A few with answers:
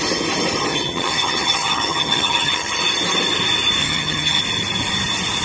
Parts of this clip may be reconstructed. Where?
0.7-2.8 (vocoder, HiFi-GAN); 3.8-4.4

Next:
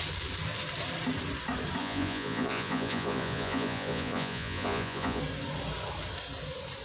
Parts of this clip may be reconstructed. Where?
1.8-5.2 (vocoder, Vocos)

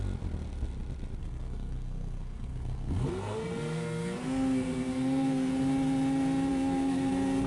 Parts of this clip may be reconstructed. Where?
1.2-5.5 (codec, SNAC); 6.5-7.1

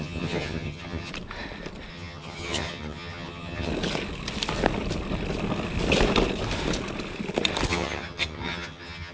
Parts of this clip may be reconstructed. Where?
0.0-1.1 (vocoder, HiFi-GAN); 1.9-3.7; 7.7-9.1

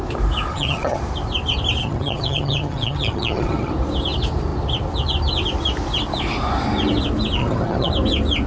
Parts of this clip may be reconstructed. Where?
0.5-1.0 (vocoder, HiFi-GAN); 1.8-3.7; 7.4-7.9

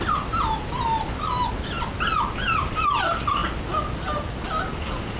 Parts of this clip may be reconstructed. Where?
none